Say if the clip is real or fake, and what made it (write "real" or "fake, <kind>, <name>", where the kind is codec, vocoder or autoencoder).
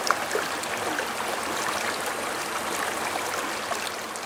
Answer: real